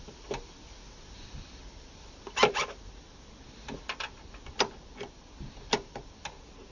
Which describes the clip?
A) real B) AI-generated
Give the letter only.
A